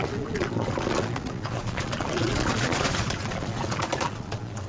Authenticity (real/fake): fake